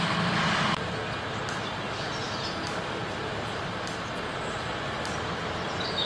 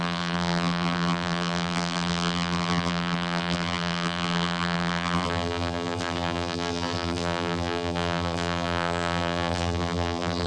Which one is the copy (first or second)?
second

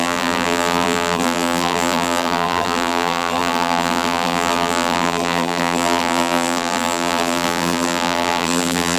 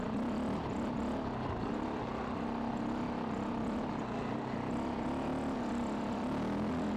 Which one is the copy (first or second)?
first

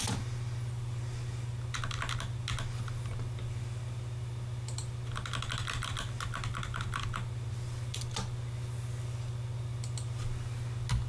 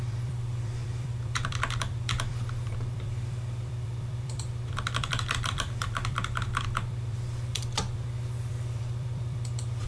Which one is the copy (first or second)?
second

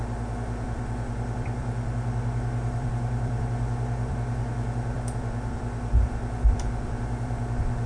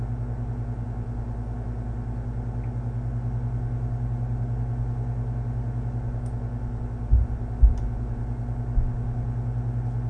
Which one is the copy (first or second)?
first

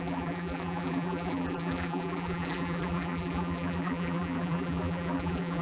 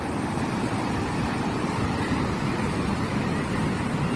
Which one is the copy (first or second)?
first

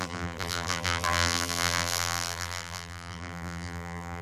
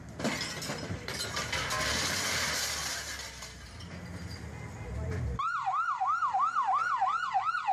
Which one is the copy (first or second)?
first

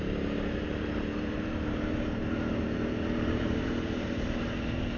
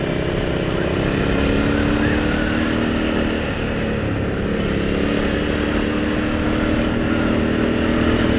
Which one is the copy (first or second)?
first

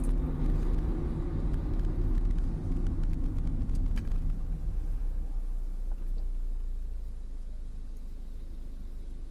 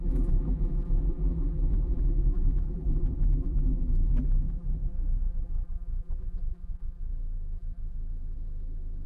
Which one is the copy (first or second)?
second